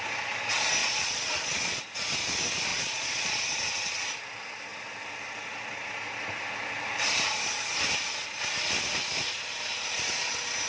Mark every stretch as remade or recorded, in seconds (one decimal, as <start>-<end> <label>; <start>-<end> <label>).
0.0-0.8 recorded; 0.8-1.8 remade; 1.8-2.7 recorded; 2.7-3.4 remade; 3.4-10.7 recorded